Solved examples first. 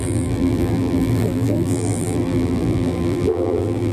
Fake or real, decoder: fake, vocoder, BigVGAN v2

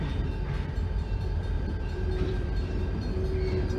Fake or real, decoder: fake, vocoder, BigVGAN v2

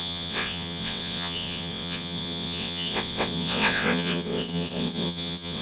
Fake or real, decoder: fake, vocoder, WaveNeXt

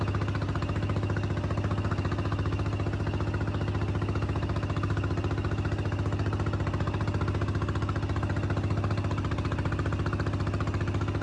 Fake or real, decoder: real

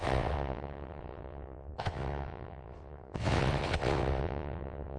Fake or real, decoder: fake, vocoder, WaveNeXt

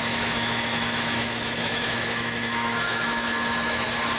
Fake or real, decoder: fake, autoencoder, DAC-VAE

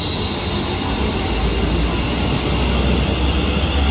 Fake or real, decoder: real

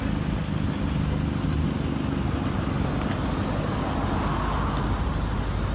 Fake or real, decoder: real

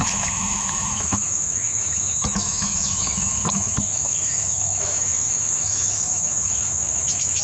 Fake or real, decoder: fake, autoencoder, DAC-VAE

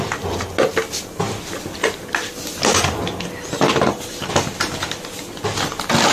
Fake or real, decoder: real